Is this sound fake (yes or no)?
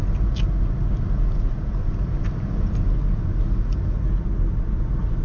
no